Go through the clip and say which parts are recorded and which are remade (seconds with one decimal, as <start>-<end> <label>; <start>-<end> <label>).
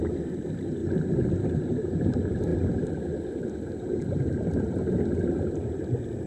0.0-6.3 recorded